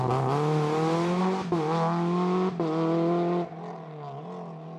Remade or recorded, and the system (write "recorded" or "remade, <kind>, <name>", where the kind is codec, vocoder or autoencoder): recorded